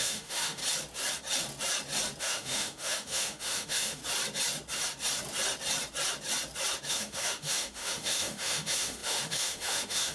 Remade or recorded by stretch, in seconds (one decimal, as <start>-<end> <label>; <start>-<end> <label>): 0.0-0.6 remade; 0.6-2.2 recorded; 2.2-4.0 remade; 4.0-6.9 recorded; 6.9-10.1 remade